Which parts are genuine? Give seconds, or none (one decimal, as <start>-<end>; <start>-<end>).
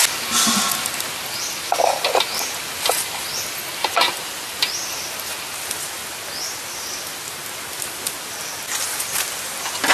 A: 0.0-3.8; 4.3-9.9